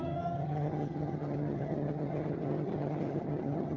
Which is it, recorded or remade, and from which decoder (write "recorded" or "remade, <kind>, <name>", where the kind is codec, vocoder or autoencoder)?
remade, vocoder, HiFi-GAN